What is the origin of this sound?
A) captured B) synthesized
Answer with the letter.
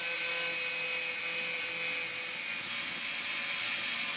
A